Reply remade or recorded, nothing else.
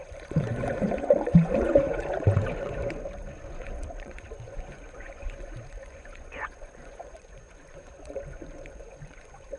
remade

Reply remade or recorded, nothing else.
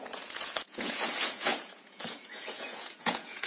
remade